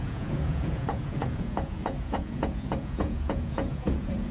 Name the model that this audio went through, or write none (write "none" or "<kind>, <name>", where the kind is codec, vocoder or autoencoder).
vocoder, Vocos